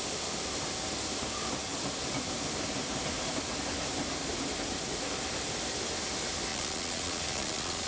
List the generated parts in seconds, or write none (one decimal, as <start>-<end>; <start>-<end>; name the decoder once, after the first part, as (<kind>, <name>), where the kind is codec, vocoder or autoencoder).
6.5-7.9 (vocoder, Vocos)